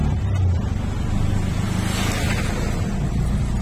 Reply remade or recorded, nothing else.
recorded